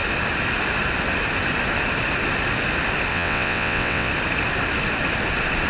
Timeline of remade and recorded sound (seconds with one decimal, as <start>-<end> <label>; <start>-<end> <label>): 0.0-3.1 recorded; 3.1-4.1 remade; 4.1-5.7 recorded